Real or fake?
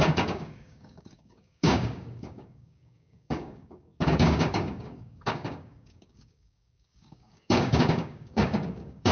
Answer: fake